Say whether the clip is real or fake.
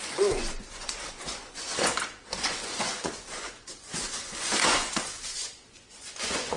fake